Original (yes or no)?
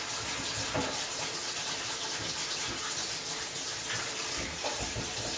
yes